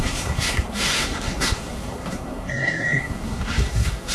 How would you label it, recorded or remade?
remade